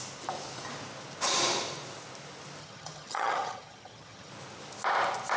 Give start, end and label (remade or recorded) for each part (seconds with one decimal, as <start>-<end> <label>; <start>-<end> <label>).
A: 0.0-2.6 recorded; 2.6-4.3 remade; 4.3-5.4 recorded